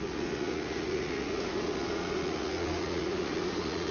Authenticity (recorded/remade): remade